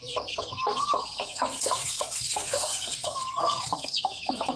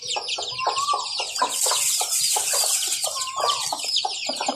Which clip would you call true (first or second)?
second